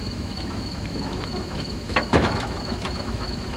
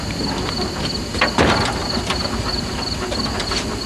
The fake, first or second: first